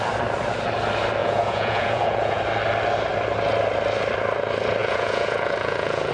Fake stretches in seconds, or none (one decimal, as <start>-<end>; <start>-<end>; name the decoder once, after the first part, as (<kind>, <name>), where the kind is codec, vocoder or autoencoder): 1.2-2.4 (vocoder, Vocos); 4.8-6.1